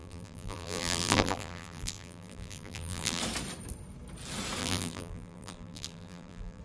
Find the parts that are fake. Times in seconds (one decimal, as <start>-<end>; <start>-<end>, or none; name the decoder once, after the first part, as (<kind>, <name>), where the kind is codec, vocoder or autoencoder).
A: 0.0-3.2 (vocoder, BigVGAN v2); 4.6-6.6